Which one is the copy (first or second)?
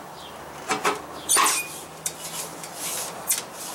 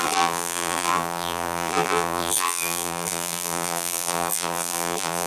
second